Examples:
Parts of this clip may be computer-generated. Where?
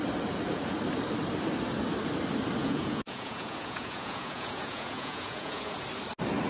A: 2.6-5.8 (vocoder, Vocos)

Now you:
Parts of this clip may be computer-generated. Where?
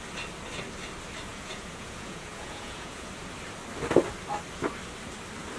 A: 1.3-3.1 (vocoder, Vocos)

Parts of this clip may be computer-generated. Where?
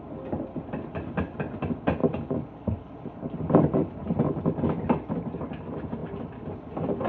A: none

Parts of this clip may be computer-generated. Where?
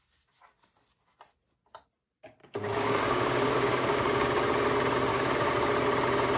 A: 2.4-4.4 (codec, DAC); 5.1-5.7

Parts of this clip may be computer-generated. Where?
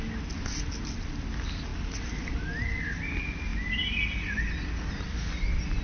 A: 1.7-2.5 (vocoder, BigVGAN v2)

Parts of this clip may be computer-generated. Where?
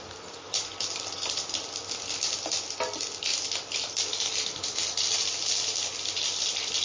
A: 0.0-0.7 (vocoder, BigVGAN v2); 1.8-6.8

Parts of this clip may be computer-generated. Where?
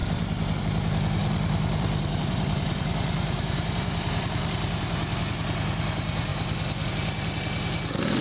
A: 0.0-0.6 (vocoder, BigVGAN v2); 1.2-5.3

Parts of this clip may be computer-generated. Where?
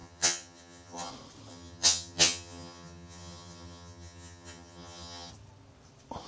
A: 0.0-1.1 (vocoder, HiFi-GAN); 1.5-5.3